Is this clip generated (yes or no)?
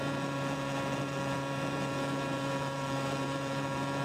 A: yes